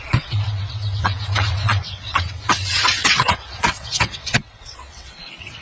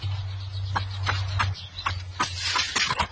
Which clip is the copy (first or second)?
first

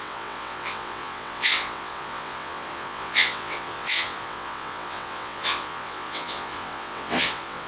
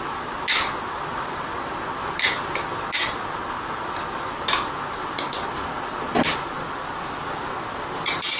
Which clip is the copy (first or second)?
first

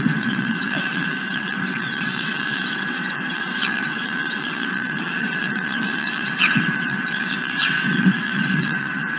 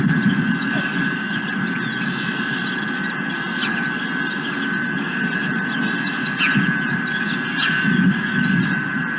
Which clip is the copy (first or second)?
first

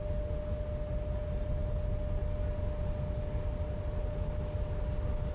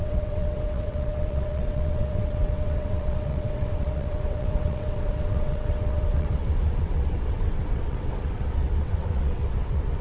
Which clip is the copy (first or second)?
second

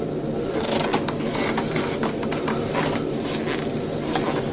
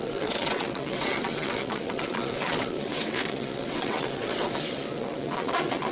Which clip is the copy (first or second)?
second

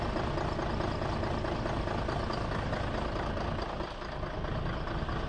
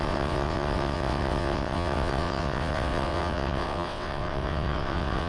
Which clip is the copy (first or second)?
second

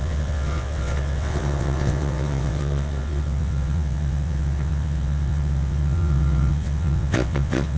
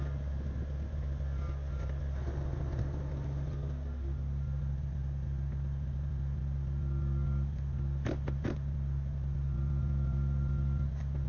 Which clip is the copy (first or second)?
first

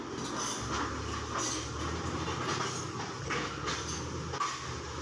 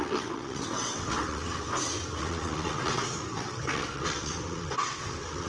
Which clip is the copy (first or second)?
second